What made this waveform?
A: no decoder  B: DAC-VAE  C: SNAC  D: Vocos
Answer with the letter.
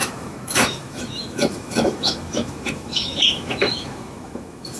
B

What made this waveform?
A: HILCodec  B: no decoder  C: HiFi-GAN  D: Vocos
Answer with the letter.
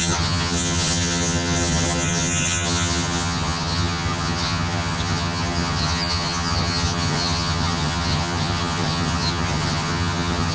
C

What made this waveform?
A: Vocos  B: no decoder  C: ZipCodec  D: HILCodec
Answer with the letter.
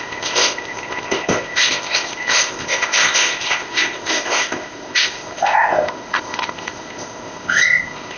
C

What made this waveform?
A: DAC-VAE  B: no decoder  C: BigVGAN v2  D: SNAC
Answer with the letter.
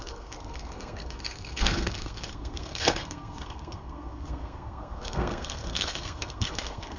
D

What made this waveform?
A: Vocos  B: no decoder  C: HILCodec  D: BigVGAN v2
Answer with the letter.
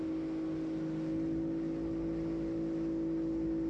B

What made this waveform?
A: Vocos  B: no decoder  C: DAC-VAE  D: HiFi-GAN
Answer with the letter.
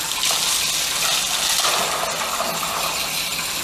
B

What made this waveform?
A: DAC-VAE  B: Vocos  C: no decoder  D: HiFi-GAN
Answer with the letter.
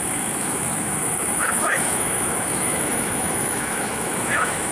A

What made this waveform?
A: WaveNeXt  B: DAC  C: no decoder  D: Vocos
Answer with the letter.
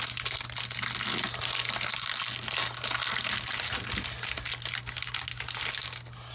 C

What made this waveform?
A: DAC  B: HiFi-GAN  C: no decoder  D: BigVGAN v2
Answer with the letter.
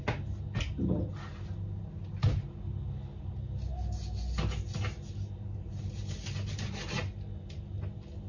C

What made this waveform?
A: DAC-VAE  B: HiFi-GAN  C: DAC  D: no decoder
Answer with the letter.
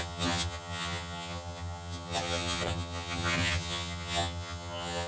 B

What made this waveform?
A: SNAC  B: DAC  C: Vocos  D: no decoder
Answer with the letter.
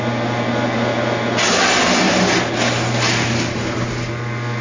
D